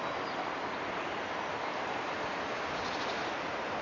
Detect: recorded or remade recorded